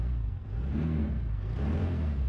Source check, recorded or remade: remade